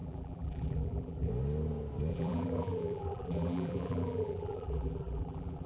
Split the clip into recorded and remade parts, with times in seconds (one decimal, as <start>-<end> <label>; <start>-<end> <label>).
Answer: 0.0-1.3 remade; 1.3-2.1 recorded; 2.1-5.7 remade